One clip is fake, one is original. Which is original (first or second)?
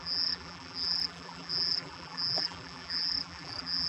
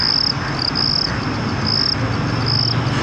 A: second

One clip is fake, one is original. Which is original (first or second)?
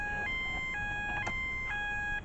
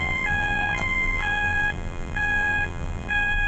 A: first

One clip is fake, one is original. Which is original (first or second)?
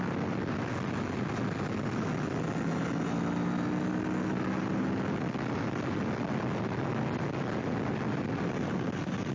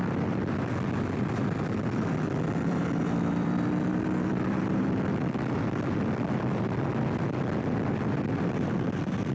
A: first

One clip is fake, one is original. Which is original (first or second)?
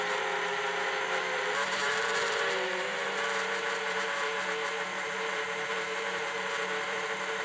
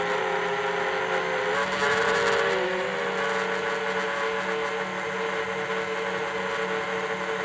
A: second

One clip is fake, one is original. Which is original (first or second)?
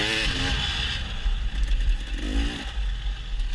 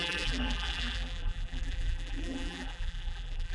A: first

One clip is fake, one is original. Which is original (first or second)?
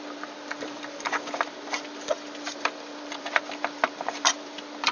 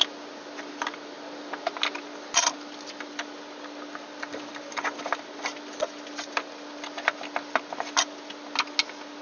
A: second